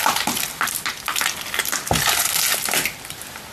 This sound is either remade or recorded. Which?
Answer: recorded